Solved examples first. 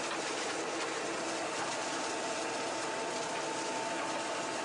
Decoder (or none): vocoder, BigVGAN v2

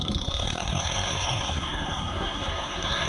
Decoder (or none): codec, SNAC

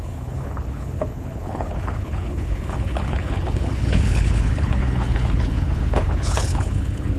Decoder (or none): codec, HILCodec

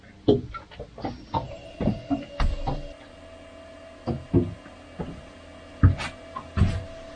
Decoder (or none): none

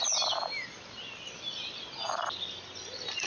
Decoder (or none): none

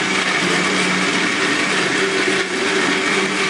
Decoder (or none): none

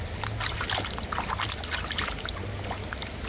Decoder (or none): none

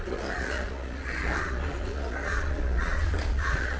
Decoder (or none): vocoder, Vocos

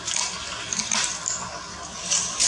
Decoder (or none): none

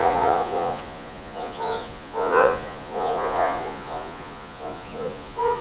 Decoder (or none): vocoder, Vocos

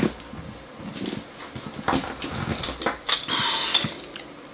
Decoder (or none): none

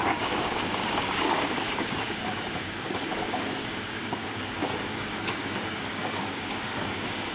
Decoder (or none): codec, DAC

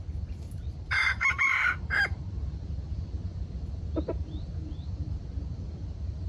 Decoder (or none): vocoder, BigVGAN v2